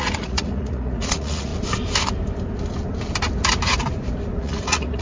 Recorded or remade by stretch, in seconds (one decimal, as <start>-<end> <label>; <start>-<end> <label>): 0.0-1.5 remade; 1.5-4.4 recorded; 4.4-5.0 remade